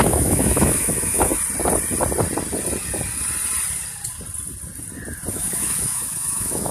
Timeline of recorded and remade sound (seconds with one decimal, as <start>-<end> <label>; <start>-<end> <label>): 0.0-1.3 remade; 1.3-5.3 recorded; 5.3-6.7 remade